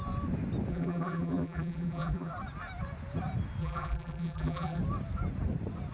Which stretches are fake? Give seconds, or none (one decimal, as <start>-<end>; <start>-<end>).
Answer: 0.7-2.3; 3.6-4.8

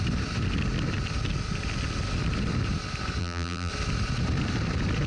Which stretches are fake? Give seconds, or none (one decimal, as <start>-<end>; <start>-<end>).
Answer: 3.2-3.7

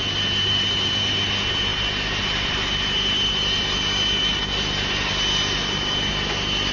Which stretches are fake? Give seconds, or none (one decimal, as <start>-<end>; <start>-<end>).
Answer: none

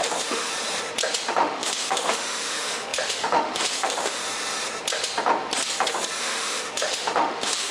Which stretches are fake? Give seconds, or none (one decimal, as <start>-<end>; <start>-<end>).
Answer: 0.0-0.5; 1.3-4.2; 6.2-7.7